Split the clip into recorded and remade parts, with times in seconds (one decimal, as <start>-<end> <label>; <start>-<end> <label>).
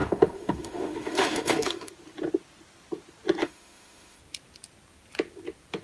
0.0-1.9 remade; 1.9-3.4 recorded; 3.4-4.2 remade; 4.2-5.8 recorded